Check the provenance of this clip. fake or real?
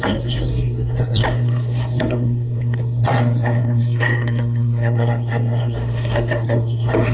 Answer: fake